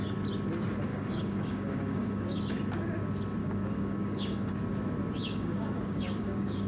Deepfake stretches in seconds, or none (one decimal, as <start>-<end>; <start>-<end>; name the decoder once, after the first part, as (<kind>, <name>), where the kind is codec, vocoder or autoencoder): 0.9-2.4 (codec, DAC); 3.4-4.5; 5.3-6.7

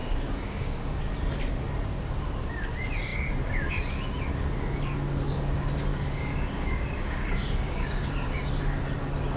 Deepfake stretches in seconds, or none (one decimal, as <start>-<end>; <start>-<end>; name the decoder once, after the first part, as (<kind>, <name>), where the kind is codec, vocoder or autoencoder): 0.0-1.0 (codec, DAC); 5.9-8.5

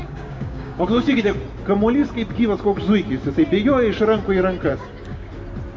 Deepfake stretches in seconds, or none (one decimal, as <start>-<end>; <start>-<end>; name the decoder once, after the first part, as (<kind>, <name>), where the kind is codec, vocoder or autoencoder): 0.0-1.4 (codec, DAC); 4.7-5.3

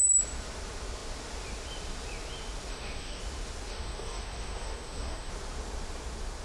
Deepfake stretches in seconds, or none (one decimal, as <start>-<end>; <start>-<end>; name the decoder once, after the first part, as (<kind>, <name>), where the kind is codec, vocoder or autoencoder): 2.7-3.2 (codec, DAC); 3.7-5.3